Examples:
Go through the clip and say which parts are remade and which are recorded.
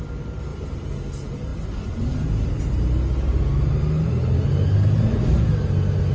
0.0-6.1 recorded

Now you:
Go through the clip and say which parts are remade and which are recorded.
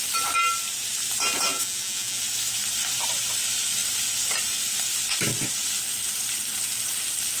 0.0-1.5 recorded; 1.5-2.2 remade; 2.2-7.4 recorded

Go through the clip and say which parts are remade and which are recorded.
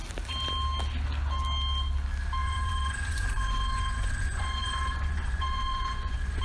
0.0-2.4 recorded; 2.4-6.4 remade